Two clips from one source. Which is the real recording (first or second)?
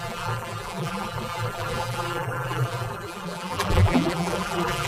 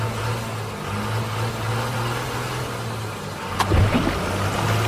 second